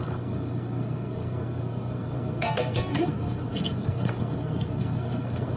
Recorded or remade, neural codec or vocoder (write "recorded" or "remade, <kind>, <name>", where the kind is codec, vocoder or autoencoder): remade, codec, SNAC